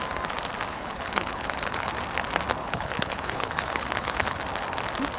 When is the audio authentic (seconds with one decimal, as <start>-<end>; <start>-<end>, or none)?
0.0-0.7; 1.9-2.6; 4.4-5.2